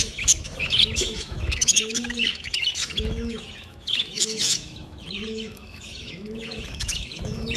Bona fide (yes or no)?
no